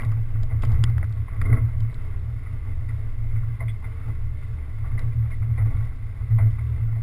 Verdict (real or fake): real